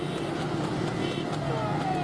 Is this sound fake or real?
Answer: real